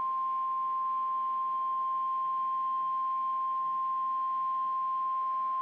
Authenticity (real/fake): fake